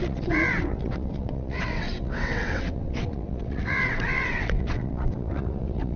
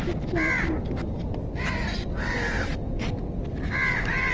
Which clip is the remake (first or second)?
first